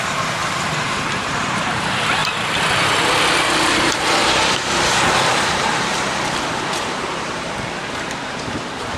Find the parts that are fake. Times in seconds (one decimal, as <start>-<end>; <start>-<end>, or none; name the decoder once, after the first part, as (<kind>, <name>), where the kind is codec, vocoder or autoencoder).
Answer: 0.0-2.2 (vocoder, BigVGAN v2); 5.5-5.9; 7.9-9.0